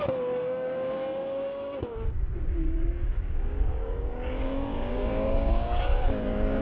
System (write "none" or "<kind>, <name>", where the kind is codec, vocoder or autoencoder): codec, DAC